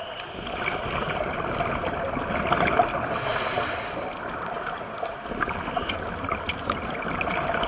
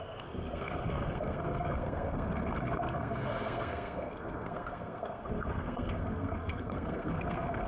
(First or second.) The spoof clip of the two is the second